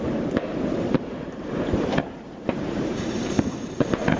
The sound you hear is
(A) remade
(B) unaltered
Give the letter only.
A